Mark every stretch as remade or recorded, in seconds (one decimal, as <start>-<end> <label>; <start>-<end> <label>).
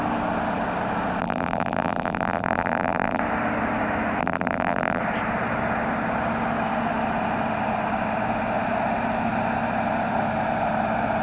0.0-1.2 recorded; 1.2-3.2 remade; 3.2-4.2 recorded; 4.2-5.0 remade; 5.0-11.2 recorded